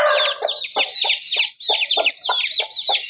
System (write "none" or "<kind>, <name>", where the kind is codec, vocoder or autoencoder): none